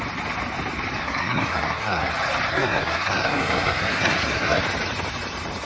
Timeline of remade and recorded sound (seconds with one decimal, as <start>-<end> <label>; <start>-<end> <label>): 0.0-1.0 recorded; 1.0-2.1 remade; 2.1-2.5 recorded; 2.5-4.6 remade; 4.6-5.6 recorded